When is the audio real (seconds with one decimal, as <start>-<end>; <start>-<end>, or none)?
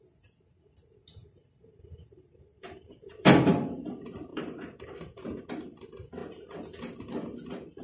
0.0-1.2; 3.5-4.3; 5.4-7.8